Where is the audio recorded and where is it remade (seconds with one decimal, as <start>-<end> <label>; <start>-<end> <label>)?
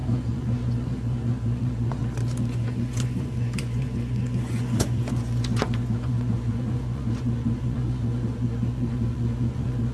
0.0-2.0 remade; 2.0-2.5 recorded; 2.5-9.9 remade